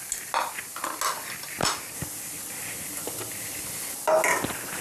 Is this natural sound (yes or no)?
yes